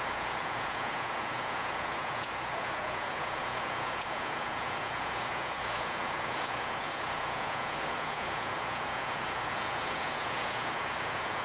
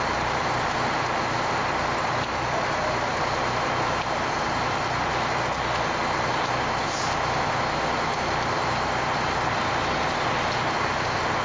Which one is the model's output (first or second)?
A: first